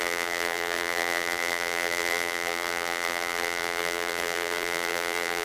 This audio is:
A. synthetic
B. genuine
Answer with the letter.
A